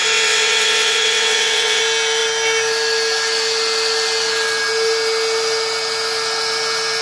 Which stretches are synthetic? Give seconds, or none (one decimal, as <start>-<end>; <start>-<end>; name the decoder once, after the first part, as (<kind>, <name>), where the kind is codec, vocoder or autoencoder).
0.0-1.8 (vocoder, WaveNeXt)